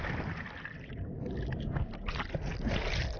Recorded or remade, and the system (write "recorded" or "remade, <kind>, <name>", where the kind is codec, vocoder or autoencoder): recorded